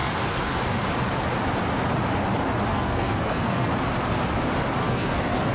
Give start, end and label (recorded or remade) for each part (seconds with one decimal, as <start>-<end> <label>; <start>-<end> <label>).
0.0-0.6 remade; 0.6-2.7 recorded; 2.7-3.7 remade; 3.7-4.8 recorded; 4.8-5.5 remade